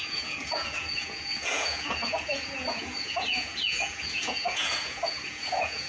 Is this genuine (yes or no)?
no